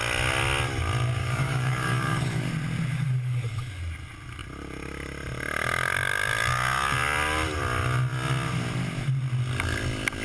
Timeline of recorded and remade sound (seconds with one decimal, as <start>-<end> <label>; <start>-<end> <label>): 0.0-1.2 recorded; 1.2-2.5 remade; 2.5-2.9 recorded; 2.9-3.8 remade; 3.8-10.2 recorded